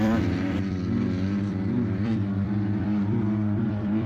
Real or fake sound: fake